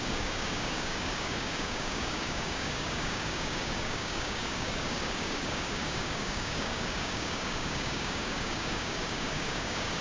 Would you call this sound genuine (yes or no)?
no